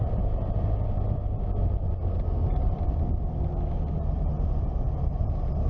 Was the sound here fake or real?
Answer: real